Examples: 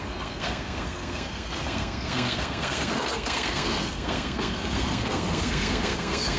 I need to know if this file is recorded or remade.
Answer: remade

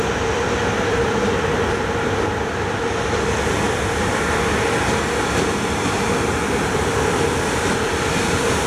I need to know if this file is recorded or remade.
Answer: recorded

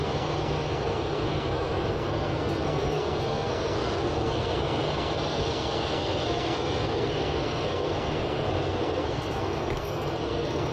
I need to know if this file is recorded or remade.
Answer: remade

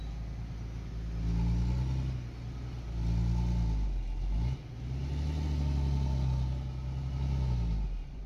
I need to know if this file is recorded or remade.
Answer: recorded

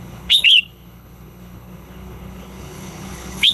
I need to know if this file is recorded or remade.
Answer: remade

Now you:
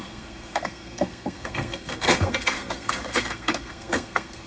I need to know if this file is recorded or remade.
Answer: remade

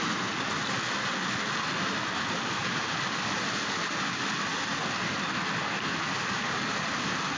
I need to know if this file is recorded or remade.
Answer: recorded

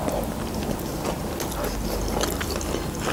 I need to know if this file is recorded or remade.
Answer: recorded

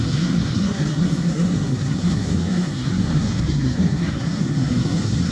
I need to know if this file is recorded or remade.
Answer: remade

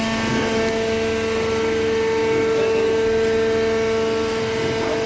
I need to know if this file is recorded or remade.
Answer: recorded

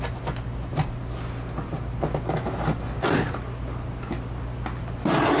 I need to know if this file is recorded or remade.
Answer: recorded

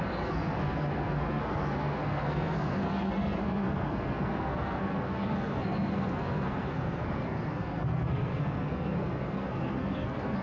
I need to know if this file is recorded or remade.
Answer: remade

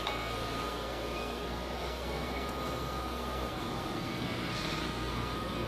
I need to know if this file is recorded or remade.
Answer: remade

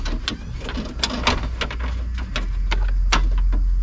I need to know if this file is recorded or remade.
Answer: recorded